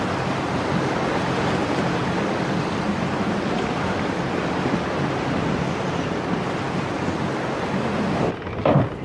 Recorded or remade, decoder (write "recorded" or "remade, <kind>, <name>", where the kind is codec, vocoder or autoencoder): recorded